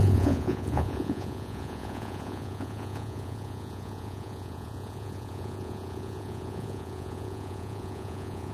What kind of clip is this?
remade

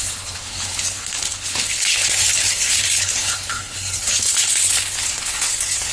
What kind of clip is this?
remade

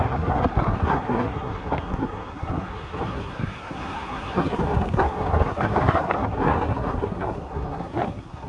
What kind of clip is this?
remade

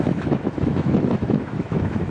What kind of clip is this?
remade